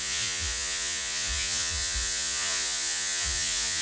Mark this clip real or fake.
fake